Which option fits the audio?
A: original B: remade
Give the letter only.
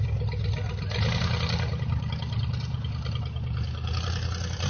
A